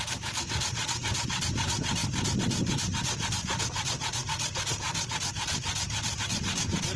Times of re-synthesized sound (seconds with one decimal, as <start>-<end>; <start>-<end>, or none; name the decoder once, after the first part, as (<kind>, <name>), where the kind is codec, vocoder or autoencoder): none